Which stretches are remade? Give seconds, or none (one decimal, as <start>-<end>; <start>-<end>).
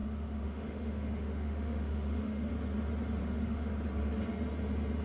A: 0.0-2.5; 3.2-3.7